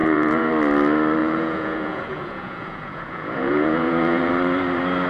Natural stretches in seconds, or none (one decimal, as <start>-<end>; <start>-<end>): 0.5-1.2; 4.3-5.1